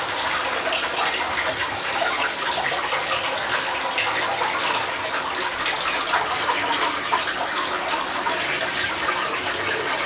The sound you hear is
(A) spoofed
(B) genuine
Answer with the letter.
B